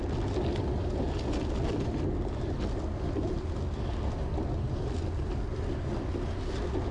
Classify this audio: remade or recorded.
recorded